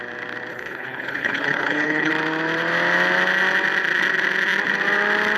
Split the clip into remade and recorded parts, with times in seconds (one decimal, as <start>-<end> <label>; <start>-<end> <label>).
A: 0.0-0.5 recorded; 0.5-2.1 remade; 2.1-5.4 recorded